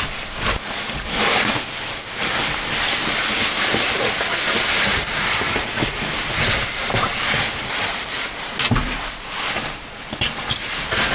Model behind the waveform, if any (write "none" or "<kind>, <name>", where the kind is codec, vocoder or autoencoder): none